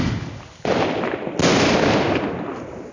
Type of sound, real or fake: real